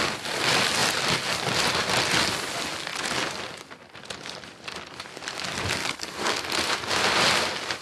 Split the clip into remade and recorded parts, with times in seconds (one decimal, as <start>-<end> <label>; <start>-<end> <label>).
0.0-5.8 recorded; 5.8-6.4 remade; 6.4-7.8 recorded